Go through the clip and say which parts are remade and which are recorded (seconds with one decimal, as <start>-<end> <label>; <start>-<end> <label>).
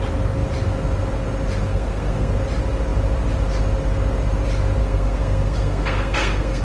0.0-1.7 recorded; 1.7-2.3 remade; 2.3-4.8 recorded; 4.8-6.6 remade